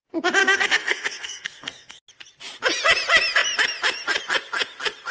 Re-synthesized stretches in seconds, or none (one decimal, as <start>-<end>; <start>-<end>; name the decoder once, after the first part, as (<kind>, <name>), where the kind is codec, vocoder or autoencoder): 0.4-2.0 (codec, SNAC)

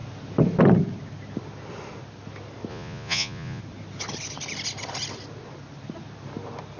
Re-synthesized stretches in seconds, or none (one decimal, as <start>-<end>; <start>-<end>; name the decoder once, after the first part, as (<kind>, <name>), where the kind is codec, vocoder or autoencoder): 2.7-3.6 (vocoder, Vocos)

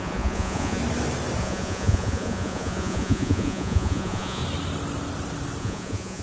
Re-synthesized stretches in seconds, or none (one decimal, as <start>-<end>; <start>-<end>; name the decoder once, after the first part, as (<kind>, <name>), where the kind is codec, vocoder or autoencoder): 0.0-0.8 (vocoder, Vocos); 1.4-4.4; 5.6-6.2

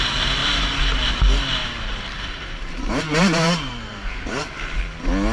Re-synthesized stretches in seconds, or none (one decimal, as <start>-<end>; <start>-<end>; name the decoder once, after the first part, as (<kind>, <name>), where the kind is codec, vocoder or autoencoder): 1.6-4.8 (vocoder, BigVGAN v2)

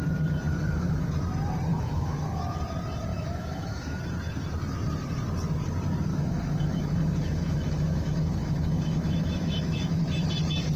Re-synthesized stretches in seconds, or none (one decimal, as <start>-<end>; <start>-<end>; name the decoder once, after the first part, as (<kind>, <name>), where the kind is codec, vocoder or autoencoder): 0.5-1.1 (autoencoder, DAC-VAE); 1.7-2.4; 3.1-4.0; 6.1-10.0

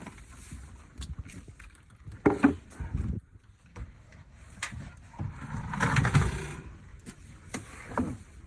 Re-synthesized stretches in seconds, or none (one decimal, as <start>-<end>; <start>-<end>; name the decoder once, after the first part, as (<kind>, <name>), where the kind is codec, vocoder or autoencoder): 3.7-4.4 (autoencoder, DAC-VAE); 6.9-7.5

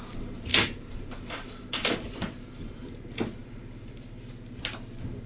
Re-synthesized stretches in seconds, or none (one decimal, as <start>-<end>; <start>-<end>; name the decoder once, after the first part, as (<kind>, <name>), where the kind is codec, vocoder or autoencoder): 0.5-2.9 (vocoder, BigVGAN v2); 3.4-4.3